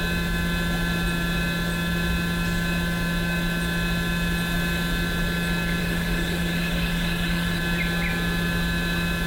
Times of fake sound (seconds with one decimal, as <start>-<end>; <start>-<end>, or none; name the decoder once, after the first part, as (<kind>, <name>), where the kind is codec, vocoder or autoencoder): 5.8-7.6 (autoencoder, DAC-VAE)